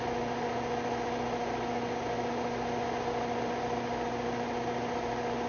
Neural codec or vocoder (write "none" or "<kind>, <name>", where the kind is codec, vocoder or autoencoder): none